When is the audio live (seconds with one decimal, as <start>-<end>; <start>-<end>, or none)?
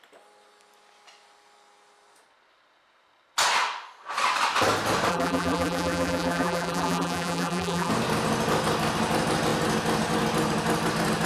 0.0-5.1; 7.9-11.3